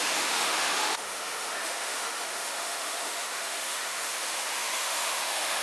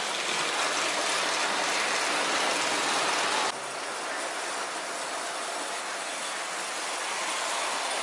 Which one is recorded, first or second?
second